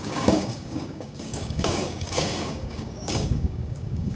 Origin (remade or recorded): remade